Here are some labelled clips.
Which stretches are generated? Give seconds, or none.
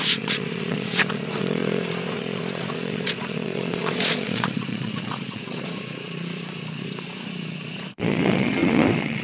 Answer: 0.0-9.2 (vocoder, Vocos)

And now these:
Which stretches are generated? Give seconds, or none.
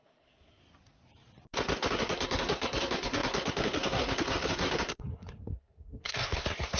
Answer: 0.0-0.6 (codec, SNAC); 1.9-6.8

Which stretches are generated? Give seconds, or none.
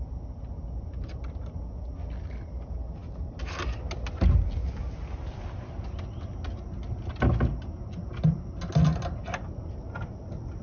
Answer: none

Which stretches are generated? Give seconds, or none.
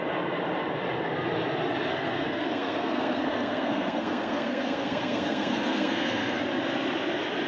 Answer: 1.9-6.4 (codec, SNAC)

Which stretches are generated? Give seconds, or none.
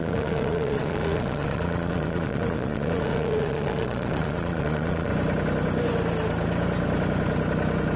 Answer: 0.0-5.1 (vocoder, Vocos)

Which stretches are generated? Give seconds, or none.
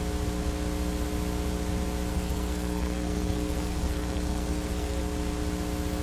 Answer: 2.1-5.0 (codec, SNAC)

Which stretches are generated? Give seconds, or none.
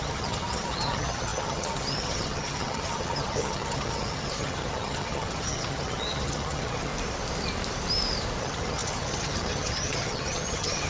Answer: 0.0-6.9 (vocoder, HiFi-GAN); 8.4-10.9